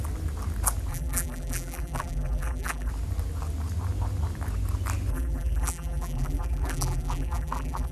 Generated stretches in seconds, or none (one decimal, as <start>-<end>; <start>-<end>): 0.9-2.9; 5.1-7.9